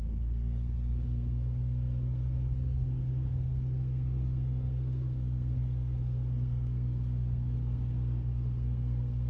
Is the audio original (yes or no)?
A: no